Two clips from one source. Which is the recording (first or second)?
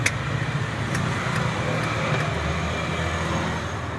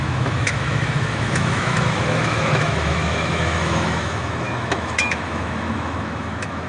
first